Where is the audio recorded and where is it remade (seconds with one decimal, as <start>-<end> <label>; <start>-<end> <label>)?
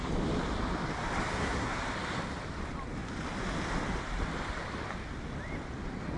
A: 0.0-1.3 recorded; 1.3-1.8 remade; 1.8-6.2 recorded